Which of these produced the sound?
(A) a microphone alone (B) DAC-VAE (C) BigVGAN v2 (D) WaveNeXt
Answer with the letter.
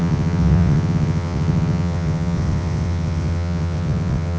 D